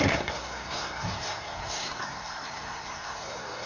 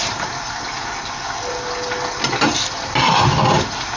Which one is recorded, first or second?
second